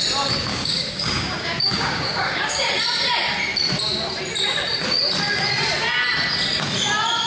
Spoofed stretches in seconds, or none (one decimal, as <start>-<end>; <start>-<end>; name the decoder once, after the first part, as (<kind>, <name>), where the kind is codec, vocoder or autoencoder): 0.5-2.7 (codec, DAC)